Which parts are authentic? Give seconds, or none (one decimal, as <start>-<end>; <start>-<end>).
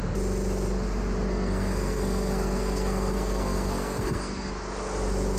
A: 0.0-1.3; 4.5-5.4